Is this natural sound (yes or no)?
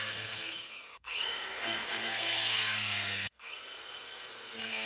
no